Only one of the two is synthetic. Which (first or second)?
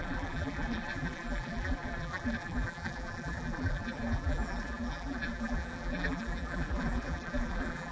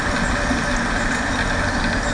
first